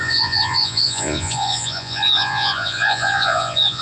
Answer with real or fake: fake